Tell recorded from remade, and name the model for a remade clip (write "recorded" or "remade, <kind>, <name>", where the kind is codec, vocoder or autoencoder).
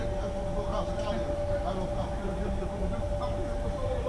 recorded